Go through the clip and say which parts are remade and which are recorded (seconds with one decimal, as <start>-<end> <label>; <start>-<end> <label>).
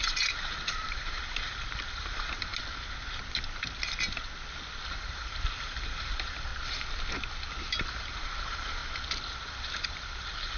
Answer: 0.0-2.5 remade; 2.5-4.9 recorded; 4.9-6.5 remade; 6.5-7.7 recorded; 7.7-8.8 remade; 8.8-9.4 recorded; 9.4-10.6 remade